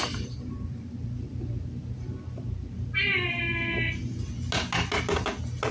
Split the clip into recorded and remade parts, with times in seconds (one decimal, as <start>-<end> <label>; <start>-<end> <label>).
0.0-3.4 remade; 3.4-5.7 recorded